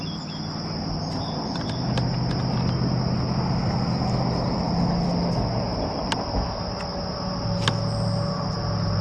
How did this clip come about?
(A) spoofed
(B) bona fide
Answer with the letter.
B